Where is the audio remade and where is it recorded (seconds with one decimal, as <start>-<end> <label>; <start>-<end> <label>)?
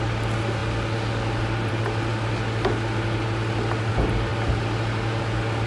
0.0-5.7 recorded